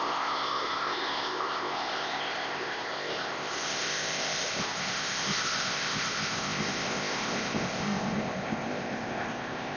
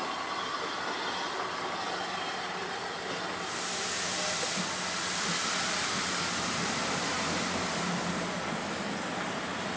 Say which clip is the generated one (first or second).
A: first